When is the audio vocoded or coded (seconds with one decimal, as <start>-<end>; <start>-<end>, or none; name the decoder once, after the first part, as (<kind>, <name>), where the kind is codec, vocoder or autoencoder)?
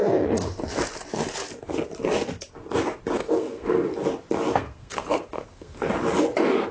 3.2-3.8 (codec, SNAC); 4.5-5.9